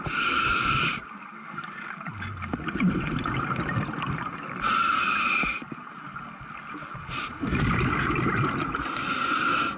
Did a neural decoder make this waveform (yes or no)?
no